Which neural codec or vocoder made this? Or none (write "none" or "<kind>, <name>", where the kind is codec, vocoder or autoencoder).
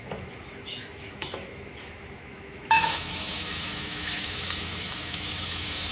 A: autoencoder, DAC-VAE